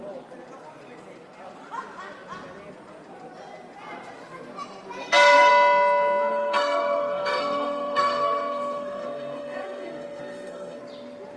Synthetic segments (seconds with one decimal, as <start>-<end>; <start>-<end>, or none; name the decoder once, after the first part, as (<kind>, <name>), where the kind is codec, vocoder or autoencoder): 5.0-5.5 (codec, SNAC); 6.3-10.8